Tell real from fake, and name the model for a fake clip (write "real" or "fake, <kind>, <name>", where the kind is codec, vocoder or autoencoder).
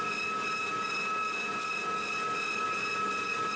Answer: real